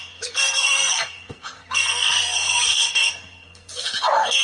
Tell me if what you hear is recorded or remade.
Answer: remade